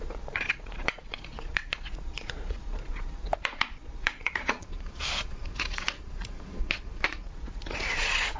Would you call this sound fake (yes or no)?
yes